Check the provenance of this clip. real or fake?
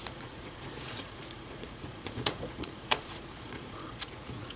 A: fake